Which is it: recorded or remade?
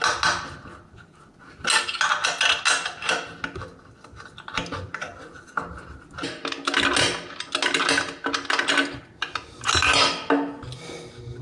recorded